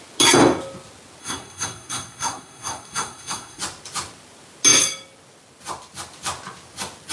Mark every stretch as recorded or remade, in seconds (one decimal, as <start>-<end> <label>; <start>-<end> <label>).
0.0-1.2 recorded; 1.2-3.6 remade; 3.6-7.1 recorded